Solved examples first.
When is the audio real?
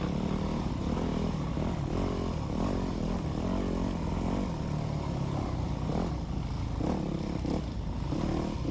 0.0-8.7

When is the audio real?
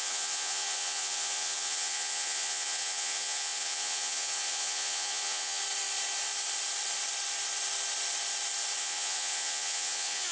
5.6-8.8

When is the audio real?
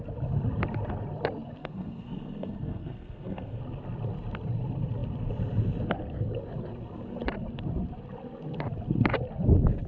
0.0-1.6; 3.6-9.9